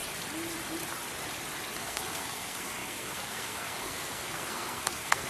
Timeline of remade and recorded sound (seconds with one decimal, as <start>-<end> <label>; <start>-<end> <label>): 0.0-1.8 recorded; 1.8-5.3 remade